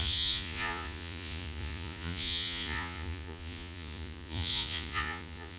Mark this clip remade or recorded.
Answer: remade